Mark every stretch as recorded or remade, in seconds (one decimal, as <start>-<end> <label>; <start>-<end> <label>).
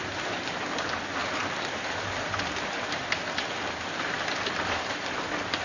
0.0-5.6 recorded